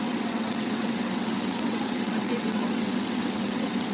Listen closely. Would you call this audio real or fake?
fake